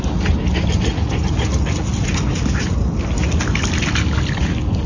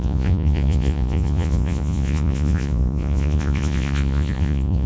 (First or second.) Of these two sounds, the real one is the first